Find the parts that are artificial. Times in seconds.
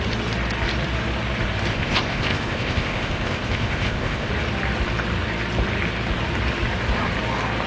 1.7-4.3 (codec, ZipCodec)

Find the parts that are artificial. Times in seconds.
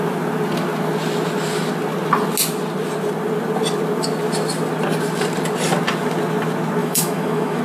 6.8-7.6 (autoencoder, DAC-VAE)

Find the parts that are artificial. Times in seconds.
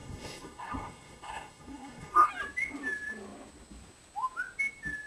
0.0-2.3 (codec, SNAC)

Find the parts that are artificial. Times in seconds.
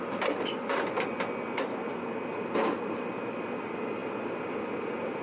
0.0-0.7 (vocoder, BigVGAN v2); 2.5-5.2